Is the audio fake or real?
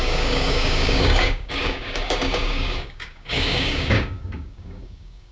fake